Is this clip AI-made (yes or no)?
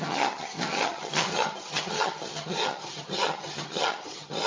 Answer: yes